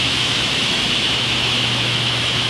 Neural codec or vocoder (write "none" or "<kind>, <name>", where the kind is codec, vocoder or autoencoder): autoencoder, DAC-VAE